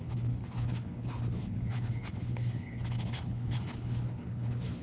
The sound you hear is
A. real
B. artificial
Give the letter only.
B